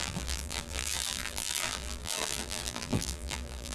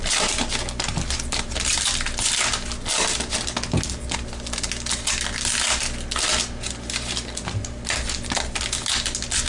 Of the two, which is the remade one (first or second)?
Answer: first